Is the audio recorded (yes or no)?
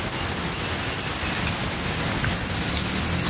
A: yes